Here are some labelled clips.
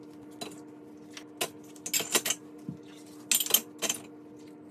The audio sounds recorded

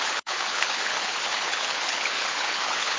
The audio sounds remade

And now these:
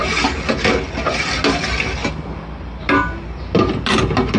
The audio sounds recorded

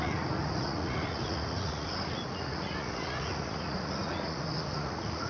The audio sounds remade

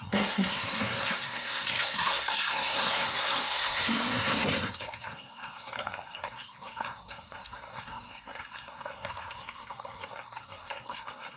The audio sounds remade